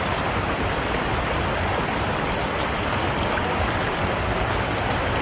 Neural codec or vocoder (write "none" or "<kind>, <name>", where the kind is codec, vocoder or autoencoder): none